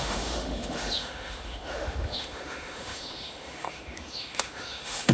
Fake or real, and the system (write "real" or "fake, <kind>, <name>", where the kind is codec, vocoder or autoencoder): fake, autoencoder, DAC-VAE